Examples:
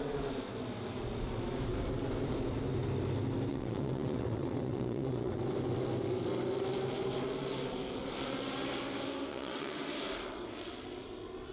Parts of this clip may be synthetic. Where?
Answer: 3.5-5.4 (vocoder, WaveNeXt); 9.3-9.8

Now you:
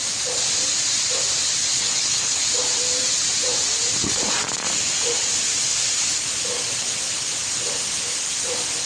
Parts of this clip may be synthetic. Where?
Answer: 1.8-2.4 (codec, HILCodec)

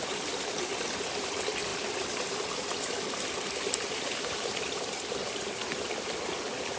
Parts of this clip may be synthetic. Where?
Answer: none

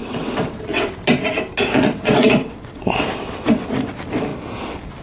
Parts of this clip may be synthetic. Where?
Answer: 0.0-0.9 (vocoder, WaveNeXt); 1.6-3.9

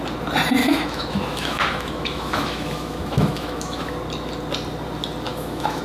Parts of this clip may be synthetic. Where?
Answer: 0.6-3.9 (autoencoder, DAC-VAE); 5.3-5.8

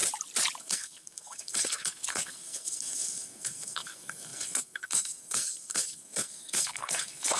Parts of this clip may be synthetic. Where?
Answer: 0.6-7.4 (codec, SNAC)

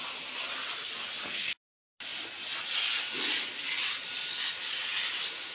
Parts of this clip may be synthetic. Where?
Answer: none

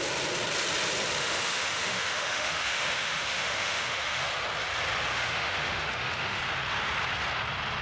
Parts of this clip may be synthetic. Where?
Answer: 1.2-4.3 (autoencoder, DAC-VAE); 5.1-6.4